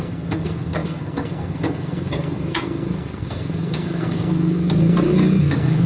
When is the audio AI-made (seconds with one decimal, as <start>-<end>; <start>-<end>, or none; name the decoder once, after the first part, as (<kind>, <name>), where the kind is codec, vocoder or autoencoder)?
0.0-5.9 (codec, SNAC)